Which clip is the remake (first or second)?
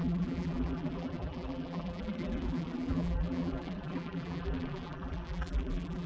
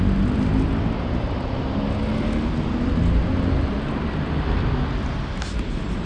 first